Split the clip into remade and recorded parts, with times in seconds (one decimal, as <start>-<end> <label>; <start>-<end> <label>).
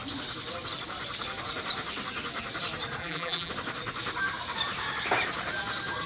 0.0-3.0 recorded; 3.0-3.5 remade; 3.5-6.1 recorded